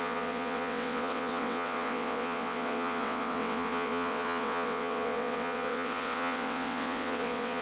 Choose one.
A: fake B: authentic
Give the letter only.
A